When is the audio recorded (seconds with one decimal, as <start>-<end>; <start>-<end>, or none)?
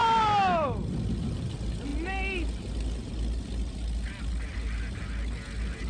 0.0-5.9